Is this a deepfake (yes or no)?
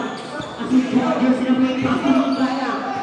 no